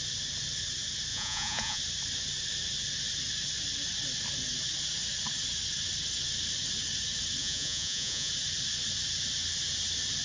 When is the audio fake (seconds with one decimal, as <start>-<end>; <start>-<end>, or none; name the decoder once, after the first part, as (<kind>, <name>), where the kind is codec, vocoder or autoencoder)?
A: 1.1-1.8 (vocoder, Vocos); 7.4-8.3